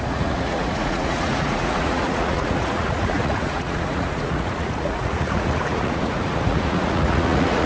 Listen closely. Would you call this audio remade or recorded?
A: remade